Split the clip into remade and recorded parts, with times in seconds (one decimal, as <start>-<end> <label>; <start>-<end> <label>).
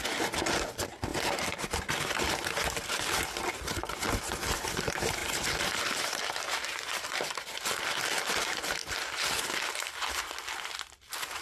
0.0-11.4 recorded